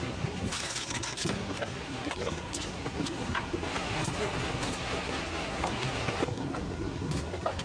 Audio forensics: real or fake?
fake